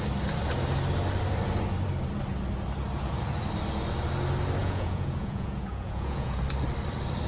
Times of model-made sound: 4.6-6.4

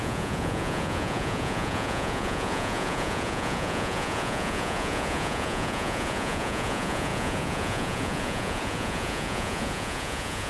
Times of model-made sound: 0.0-10.5

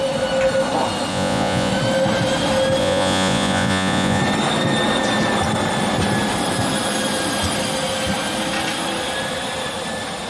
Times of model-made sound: 1.1-1.7; 2.8-4.2

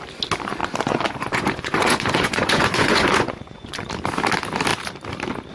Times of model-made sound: 0.6-3.9